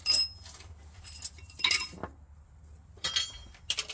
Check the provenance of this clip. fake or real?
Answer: real